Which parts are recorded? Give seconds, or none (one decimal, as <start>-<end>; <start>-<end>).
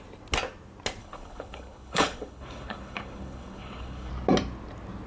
0.0-1.0; 4.1-5.1